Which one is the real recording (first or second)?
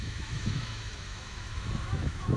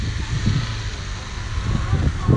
second